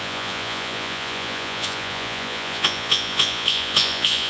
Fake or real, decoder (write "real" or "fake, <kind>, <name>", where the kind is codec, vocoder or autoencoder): fake, vocoder, Vocos